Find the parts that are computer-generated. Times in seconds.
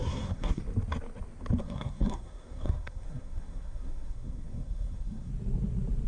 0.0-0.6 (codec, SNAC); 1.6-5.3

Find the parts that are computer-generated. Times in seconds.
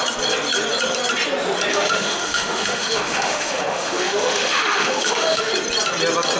1.7-5.5 (autoencoder, DAC-VAE)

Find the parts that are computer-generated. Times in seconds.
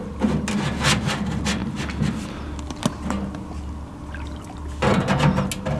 none